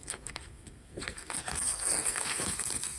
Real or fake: fake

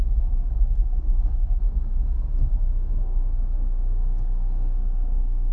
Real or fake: fake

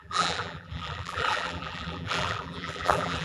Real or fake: fake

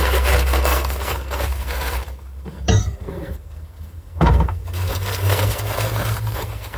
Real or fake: fake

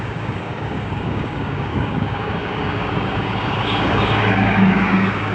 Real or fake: fake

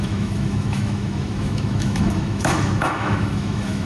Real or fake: fake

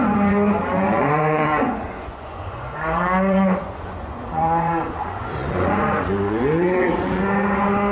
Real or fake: fake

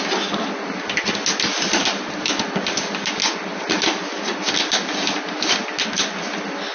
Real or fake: real